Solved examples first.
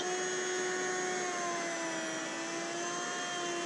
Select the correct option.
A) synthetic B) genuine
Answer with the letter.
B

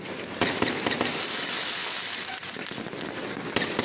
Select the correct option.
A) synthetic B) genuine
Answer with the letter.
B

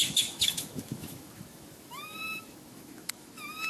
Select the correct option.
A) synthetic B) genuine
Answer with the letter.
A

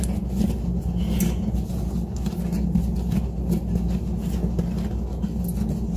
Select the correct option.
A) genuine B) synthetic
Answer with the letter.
A